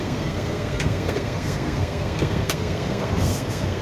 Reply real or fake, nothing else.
fake